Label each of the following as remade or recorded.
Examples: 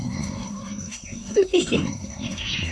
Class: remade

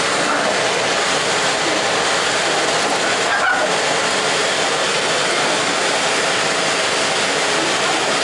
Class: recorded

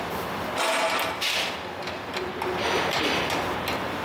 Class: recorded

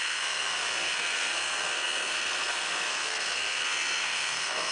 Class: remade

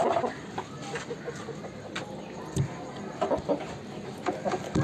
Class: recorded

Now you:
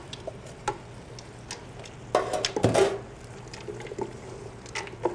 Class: recorded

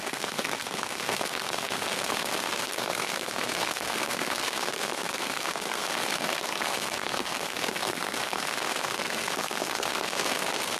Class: remade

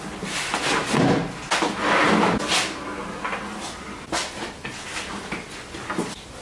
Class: recorded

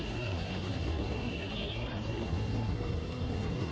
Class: remade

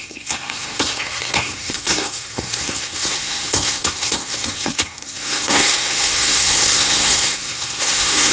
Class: remade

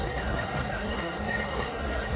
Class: remade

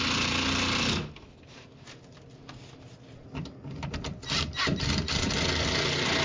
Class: recorded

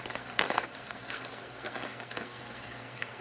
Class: remade